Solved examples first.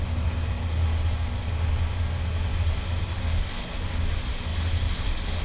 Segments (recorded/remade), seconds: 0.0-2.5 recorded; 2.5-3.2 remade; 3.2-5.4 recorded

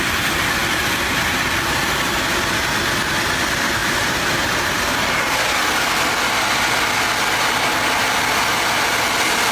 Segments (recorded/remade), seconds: 0.0-3.8 recorded; 3.8-5.3 remade; 5.3-9.5 recorded

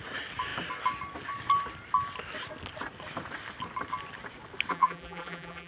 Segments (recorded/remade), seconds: 0.0-4.7 recorded; 4.7-5.7 remade

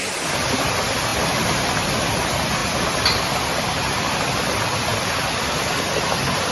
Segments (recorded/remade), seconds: 0.0-2.6 recorded; 2.6-4.2 remade; 4.2-6.5 recorded

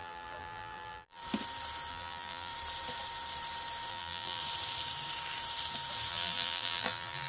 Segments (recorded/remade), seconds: 0.0-1.2 remade; 1.2-1.9 recorded; 1.9-2.5 remade; 2.5-3.9 recorded; 3.9-4.4 remade; 4.4-6.1 recorded; 6.1-7.3 remade

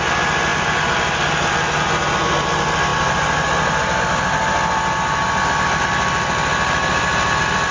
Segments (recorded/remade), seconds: 0.0-0.5 recorded; 0.5-1.2 remade; 1.2-7.7 recorded